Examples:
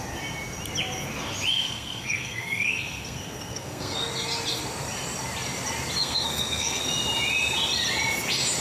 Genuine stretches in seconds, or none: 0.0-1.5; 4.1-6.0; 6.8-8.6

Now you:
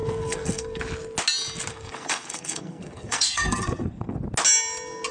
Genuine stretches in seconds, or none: 0.8-1.7; 4.2-5.1

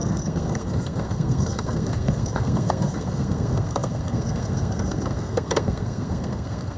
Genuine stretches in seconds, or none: none

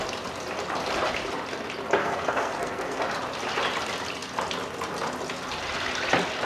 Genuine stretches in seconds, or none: 0.0-2.0; 3.0-6.5

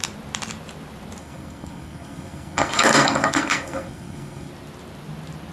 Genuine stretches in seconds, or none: 0.0-1.2; 4.5-5.5